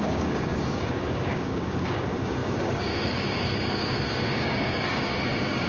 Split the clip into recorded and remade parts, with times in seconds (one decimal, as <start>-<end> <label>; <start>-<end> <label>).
0.0-5.7 remade